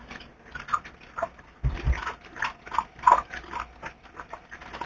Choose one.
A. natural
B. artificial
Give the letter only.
A